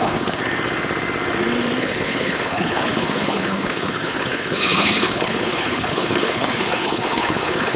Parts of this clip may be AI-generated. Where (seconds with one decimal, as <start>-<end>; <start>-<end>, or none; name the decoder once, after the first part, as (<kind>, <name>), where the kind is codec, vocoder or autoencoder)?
0.0-0.4 (codec, HILCodec); 1.8-7.8